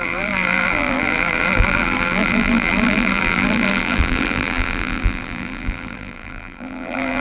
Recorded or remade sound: remade